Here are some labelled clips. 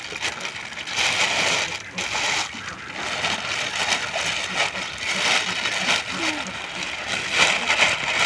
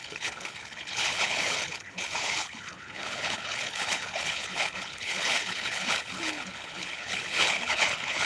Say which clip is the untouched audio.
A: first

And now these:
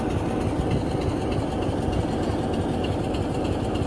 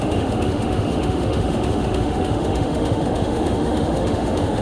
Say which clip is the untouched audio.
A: first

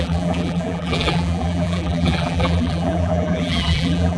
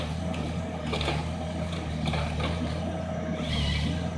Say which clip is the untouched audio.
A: second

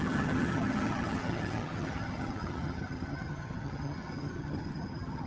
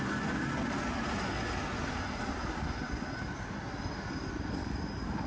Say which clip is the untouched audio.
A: second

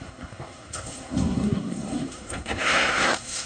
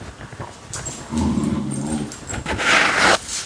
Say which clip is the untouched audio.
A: second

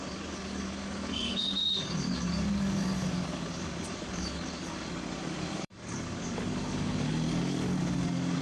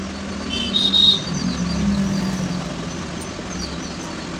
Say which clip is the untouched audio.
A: second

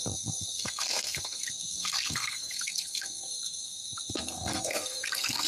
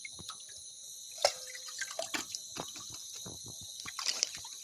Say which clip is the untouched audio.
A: second